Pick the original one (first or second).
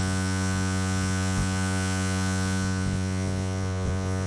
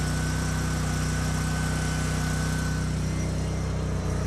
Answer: second